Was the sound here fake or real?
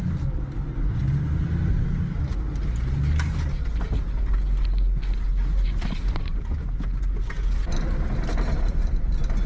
real